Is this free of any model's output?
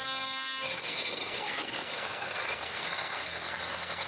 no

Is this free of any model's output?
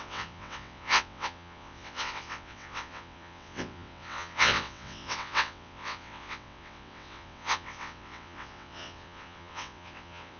no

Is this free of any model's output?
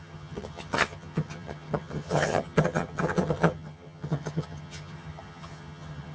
no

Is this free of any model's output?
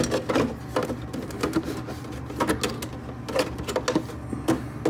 yes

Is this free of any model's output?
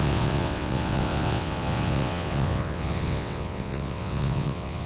no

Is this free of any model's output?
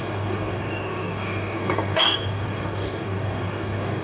no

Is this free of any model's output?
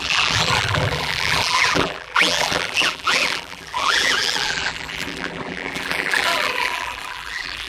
no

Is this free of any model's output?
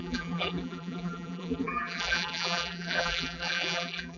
no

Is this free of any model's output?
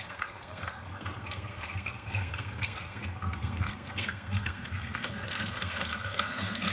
no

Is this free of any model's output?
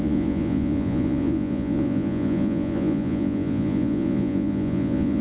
no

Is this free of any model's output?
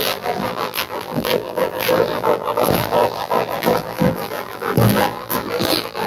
no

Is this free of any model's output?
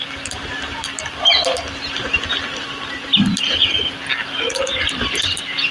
yes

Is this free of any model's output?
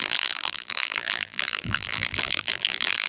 no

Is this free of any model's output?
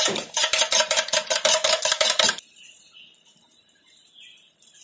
no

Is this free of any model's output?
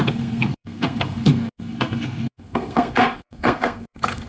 no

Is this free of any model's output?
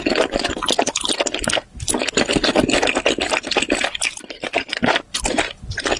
yes